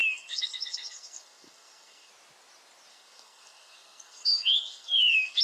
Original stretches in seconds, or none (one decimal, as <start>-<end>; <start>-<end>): 2.1-2.9